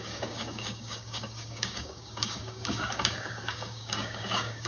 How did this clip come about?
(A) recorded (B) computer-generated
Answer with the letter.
B